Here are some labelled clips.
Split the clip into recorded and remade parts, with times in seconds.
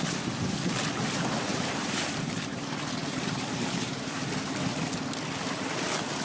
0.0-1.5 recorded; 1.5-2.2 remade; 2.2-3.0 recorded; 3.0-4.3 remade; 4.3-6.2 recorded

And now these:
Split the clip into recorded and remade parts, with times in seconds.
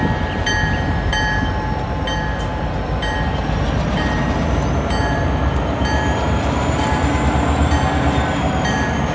0.0-9.1 remade